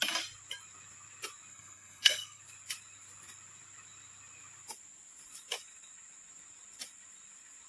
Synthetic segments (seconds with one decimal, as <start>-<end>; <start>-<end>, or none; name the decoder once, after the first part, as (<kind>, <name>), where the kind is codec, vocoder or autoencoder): 1.5-2.4 (codec, SNAC)